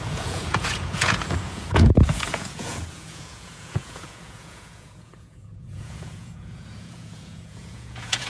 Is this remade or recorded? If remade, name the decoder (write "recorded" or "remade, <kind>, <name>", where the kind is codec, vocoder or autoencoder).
remade, vocoder, Vocos